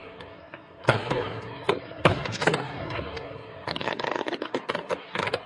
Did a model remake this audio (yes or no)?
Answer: yes